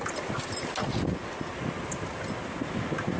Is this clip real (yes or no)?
yes